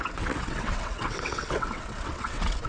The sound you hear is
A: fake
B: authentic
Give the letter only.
A